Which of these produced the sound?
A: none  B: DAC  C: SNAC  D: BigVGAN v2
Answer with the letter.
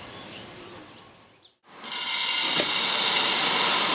D